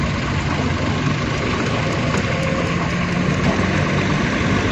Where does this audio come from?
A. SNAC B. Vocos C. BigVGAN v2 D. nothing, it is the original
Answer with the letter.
D